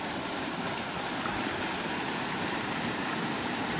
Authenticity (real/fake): fake